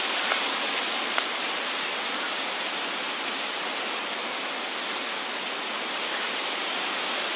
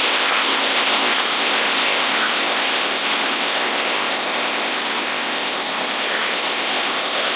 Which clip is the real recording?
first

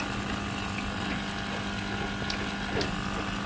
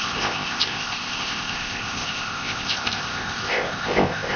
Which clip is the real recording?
first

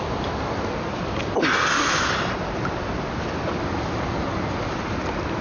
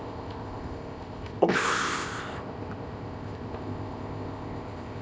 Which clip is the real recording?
first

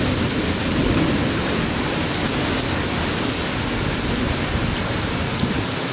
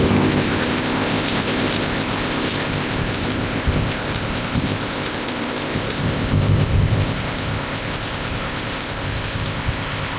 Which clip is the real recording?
first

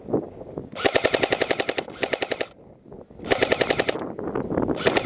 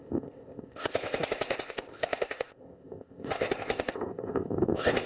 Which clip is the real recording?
first